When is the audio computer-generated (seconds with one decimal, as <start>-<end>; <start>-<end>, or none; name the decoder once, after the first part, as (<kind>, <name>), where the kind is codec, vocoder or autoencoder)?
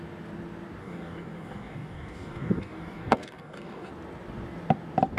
0.8-3.9 (codec, DAC)